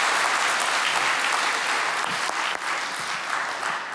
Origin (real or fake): real